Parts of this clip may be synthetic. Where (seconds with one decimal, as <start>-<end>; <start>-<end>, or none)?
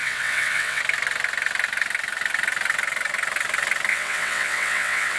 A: 0.0-0.8; 3.9-5.2